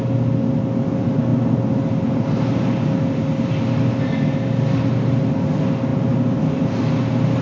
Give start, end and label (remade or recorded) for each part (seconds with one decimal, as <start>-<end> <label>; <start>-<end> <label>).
0.0-7.4 recorded